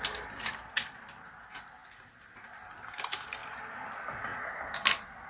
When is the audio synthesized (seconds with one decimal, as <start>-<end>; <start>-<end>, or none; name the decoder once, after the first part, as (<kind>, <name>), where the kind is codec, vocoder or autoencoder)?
0.0-4.3 (vocoder, BigVGAN v2)